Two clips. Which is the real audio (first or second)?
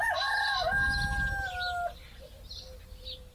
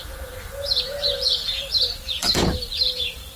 first